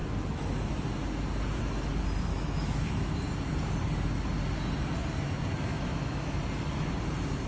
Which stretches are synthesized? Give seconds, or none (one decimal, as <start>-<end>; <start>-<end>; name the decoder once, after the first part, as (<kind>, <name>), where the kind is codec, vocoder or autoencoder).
0.0-0.7 (autoencoder, DAC-VAE); 2.3-3.1; 5.7-6.4